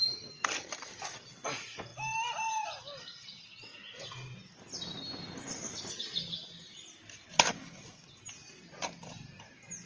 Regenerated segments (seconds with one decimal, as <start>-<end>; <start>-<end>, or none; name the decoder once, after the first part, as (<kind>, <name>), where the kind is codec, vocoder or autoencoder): none